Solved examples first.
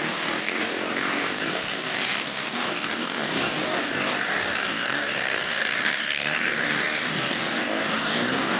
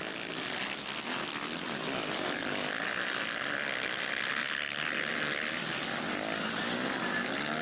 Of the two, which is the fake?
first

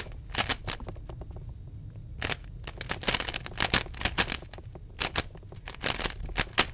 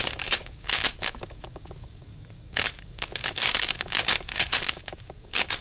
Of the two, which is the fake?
second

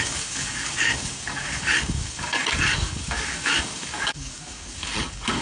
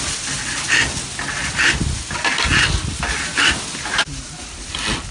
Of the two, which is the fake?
first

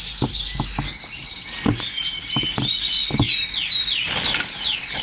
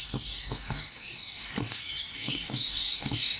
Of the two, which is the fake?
second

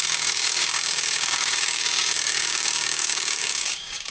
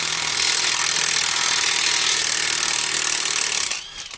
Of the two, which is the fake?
first